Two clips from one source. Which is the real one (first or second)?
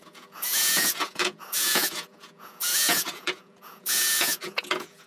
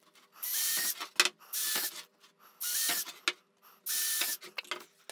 second